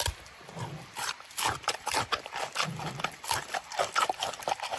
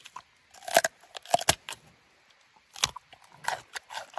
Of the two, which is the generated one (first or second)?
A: first